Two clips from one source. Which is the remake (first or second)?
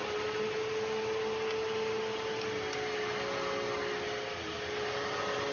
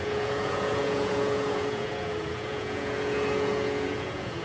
second